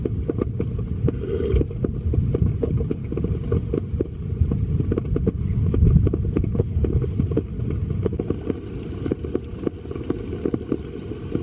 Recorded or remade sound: recorded